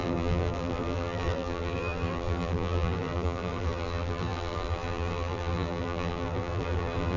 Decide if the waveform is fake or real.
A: fake